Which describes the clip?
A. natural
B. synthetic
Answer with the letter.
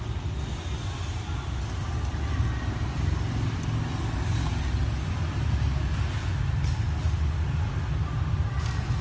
A